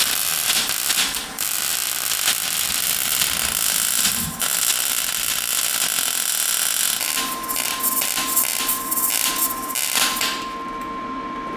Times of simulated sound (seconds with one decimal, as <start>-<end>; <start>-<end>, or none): 8.7-9.3